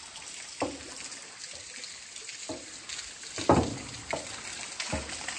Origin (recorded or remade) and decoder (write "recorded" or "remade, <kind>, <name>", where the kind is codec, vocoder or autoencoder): recorded